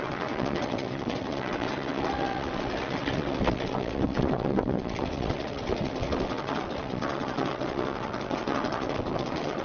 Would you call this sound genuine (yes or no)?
no